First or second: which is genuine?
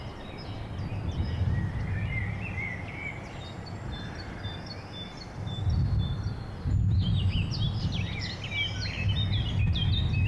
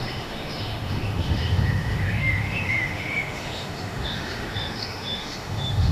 first